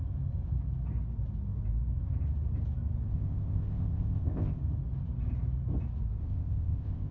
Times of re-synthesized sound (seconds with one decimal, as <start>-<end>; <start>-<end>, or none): 3.1-4.6; 6.2-7.1